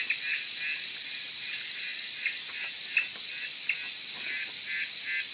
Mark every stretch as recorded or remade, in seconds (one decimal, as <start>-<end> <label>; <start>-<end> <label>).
0.0-5.3 recorded